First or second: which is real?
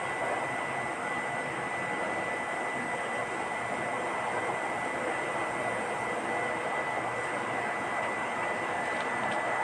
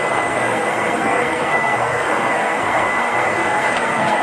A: first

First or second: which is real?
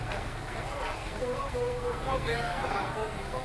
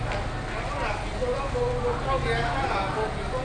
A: second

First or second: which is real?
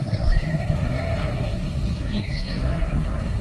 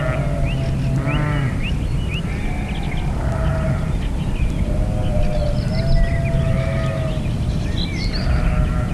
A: second